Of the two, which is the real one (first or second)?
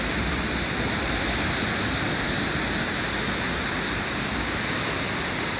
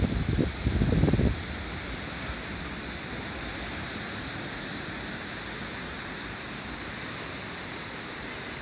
first